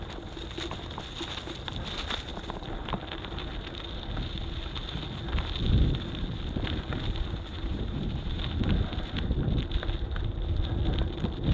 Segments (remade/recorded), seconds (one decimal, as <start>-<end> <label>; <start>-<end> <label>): 0.0-7.7 recorded; 7.7-8.4 remade; 8.4-11.5 recorded